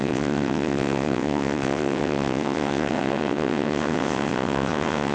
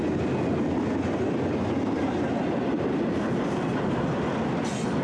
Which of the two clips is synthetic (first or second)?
first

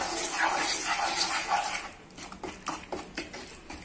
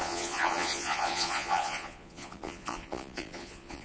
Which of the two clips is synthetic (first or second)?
second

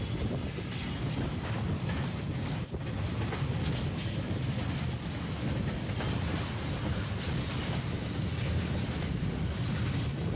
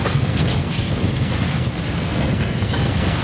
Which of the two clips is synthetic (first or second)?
second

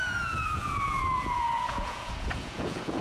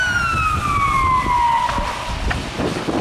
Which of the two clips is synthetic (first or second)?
first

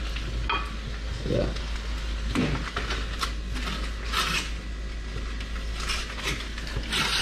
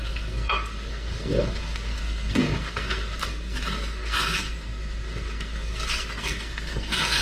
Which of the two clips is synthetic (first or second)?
second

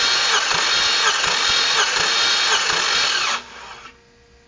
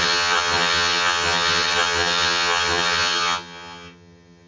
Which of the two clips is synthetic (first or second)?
second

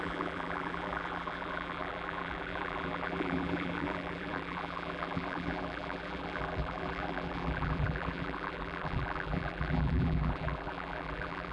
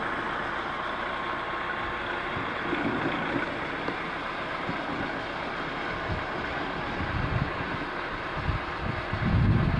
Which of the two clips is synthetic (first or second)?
first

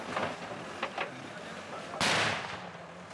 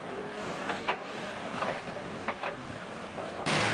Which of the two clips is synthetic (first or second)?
second